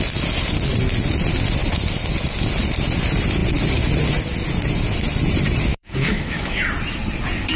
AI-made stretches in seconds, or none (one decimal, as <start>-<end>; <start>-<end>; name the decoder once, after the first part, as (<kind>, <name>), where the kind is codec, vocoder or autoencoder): 5.7-6.6 (autoencoder, DAC-VAE)